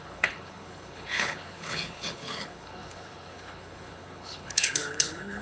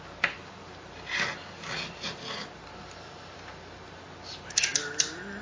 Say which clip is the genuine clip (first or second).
second